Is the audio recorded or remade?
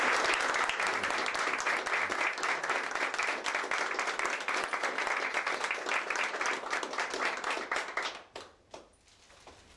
recorded